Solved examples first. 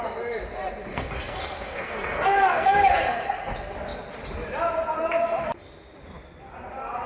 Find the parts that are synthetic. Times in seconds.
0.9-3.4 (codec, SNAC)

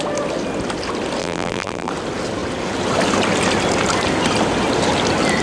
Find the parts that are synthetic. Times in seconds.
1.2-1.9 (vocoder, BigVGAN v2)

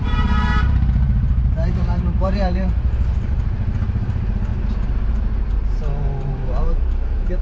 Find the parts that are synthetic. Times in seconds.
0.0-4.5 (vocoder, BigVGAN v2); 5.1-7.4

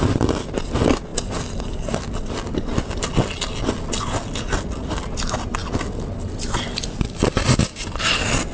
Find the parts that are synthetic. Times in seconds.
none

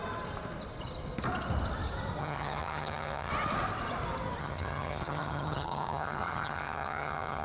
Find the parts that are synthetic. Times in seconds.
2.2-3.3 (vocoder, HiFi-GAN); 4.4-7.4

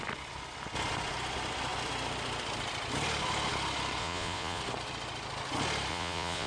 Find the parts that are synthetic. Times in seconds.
4.0-4.6 (vocoder, Vocos); 5.9-6.5

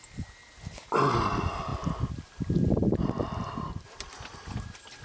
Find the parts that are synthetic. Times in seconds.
none